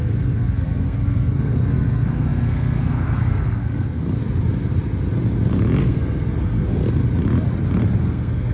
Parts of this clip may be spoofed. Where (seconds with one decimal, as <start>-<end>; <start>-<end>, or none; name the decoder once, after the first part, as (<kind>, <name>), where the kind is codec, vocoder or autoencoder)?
0.0-4.0 (codec, SNAC); 5.8-6.8; 8.0-8.5